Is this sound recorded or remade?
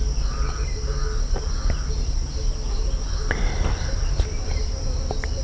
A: recorded